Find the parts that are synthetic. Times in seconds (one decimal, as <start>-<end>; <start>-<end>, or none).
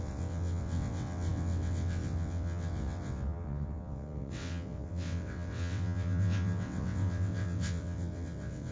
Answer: 0.0-8.7